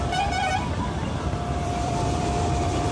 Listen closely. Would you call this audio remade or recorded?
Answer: remade